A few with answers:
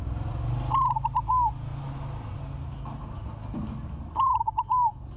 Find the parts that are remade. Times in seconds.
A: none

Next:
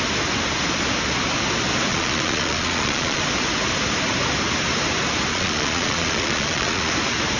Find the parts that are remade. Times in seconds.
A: 1.9-3.2; 5.3-6.9

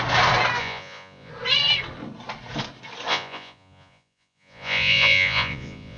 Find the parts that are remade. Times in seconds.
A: 0.6-1.3; 3.1-6.0

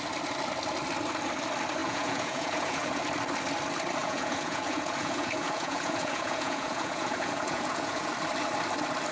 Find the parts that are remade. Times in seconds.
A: 1.8-3.0; 4.0-8.1